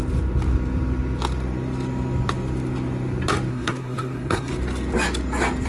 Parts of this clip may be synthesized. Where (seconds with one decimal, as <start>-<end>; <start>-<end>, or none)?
3.5-4.5